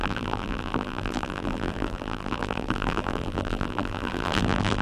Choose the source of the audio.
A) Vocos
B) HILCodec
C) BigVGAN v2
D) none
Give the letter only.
C